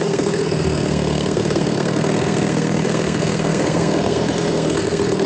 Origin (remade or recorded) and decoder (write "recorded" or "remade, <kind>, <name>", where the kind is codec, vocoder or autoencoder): remade, codec, SNAC